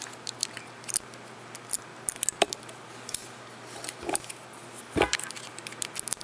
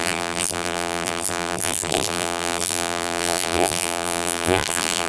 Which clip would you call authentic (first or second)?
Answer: first